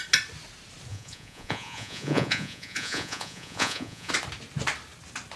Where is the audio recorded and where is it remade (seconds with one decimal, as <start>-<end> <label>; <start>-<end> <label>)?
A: 0.0-0.9 recorded; 0.9-4.1 remade; 4.1-5.4 recorded